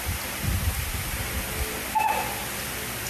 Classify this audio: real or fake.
real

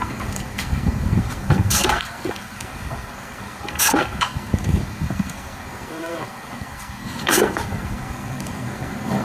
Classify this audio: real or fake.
fake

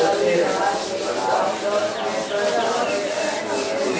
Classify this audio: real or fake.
real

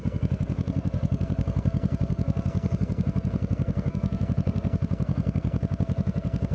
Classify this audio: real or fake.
fake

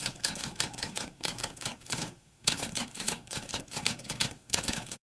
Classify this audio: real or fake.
fake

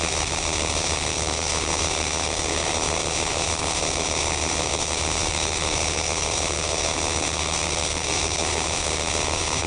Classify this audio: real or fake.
fake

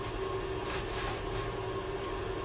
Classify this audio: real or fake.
real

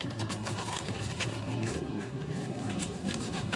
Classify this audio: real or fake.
fake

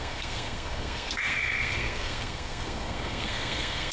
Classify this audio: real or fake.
fake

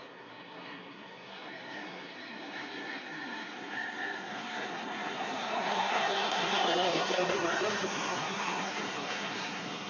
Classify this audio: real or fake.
fake